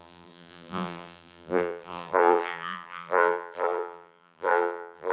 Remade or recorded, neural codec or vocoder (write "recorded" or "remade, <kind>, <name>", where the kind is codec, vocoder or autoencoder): remade, vocoder, BigVGAN v2